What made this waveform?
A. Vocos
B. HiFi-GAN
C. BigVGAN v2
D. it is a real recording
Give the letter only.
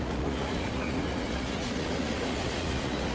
A